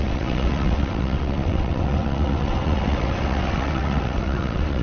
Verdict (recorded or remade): remade